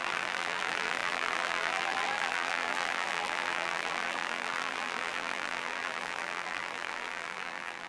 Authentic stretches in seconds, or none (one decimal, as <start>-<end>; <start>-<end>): none